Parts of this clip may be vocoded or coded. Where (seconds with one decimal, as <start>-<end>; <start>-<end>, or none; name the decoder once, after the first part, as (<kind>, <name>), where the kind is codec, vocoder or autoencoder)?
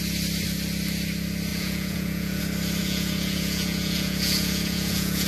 1.5-2.4 (vocoder, Vocos); 2.8-5.3